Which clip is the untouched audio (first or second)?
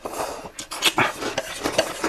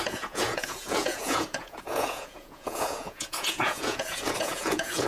first